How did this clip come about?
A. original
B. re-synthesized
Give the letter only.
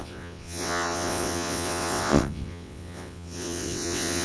B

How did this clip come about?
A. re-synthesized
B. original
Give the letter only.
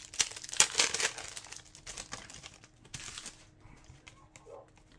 B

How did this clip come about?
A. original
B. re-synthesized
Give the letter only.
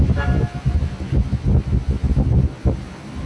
A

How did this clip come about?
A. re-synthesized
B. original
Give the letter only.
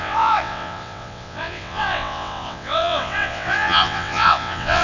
A